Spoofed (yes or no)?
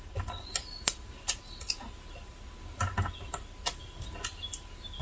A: no